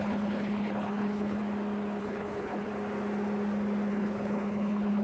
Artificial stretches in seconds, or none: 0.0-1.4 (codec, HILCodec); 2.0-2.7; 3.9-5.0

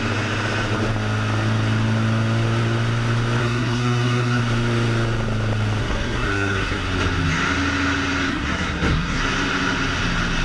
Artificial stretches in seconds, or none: 3.4-4.4 (codec, SNAC); 5.8-6.9; 8.3-9.2

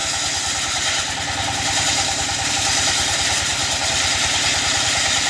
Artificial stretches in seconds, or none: 2.5-5.3 (vocoder, BigVGAN v2)

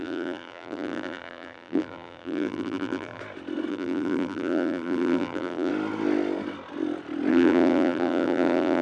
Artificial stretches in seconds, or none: 0.0-3.2 (vocoder, BigVGAN v2); 3.7-5.7; 7.3-8.8